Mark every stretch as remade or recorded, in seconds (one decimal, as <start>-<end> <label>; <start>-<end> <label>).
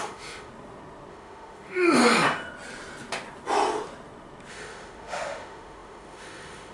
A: 0.0-0.5 remade; 0.5-1.1 recorded; 1.1-2.0 remade; 2.0-4.5 recorded; 4.5-6.7 remade